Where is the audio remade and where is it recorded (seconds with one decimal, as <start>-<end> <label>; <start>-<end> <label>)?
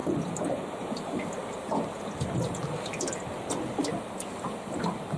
0.0-5.2 recorded